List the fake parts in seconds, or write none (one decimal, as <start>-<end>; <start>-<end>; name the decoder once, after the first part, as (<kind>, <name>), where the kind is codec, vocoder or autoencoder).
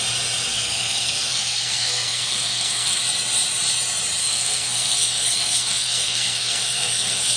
0.5-3.0 (codec, SNAC); 4.2-7.4